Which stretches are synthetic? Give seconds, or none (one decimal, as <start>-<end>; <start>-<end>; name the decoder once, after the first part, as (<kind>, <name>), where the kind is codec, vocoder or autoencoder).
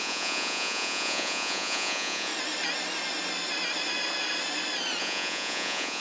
0.0-2.3 (vocoder, Vocos); 5.0-6.0